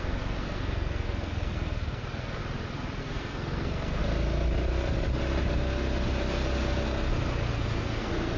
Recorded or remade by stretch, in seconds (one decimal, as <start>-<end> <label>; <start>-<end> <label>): 0.0-2.4 remade; 2.4-3.0 recorded; 3.0-4.0 remade; 4.0-7.5 recorded; 7.5-8.4 remade